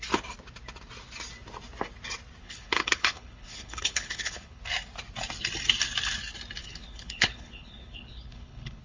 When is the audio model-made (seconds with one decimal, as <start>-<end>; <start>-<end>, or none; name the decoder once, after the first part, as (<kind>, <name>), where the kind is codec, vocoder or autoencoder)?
2.4-4.6 (codec, HILCodec); 6.6-8.8